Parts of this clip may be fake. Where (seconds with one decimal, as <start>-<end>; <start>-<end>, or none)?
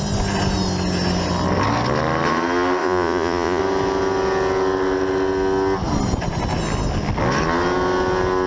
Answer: 2.8-3.6